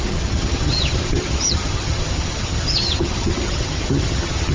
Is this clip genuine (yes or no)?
no